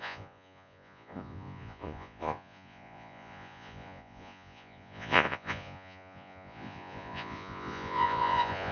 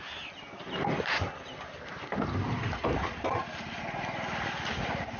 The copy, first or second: first